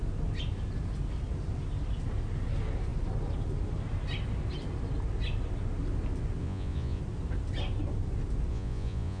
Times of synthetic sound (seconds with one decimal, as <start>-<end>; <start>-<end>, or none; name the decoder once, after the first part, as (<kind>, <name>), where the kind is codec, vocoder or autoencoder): 6.4-7.0 (vocoder, Vocos); 8.5-9.2